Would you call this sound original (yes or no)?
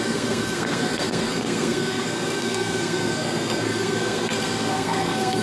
no